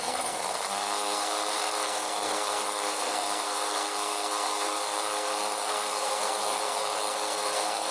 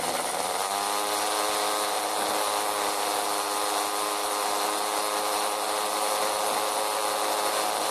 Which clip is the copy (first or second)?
first